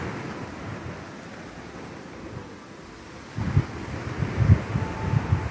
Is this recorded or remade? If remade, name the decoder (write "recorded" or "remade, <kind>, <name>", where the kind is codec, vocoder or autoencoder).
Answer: recorded